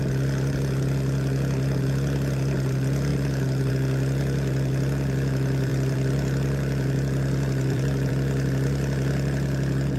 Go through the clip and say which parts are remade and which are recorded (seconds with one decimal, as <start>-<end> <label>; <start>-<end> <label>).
0.0-5.7 recorded; 5.7-8.1 remade; 8.1-10.0 recorded